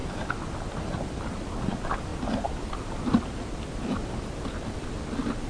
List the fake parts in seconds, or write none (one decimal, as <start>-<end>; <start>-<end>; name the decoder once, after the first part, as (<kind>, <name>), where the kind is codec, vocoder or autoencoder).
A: none